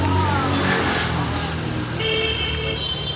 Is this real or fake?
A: real